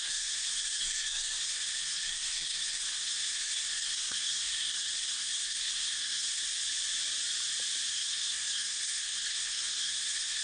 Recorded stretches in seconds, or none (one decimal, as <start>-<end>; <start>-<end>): 6.4-7.9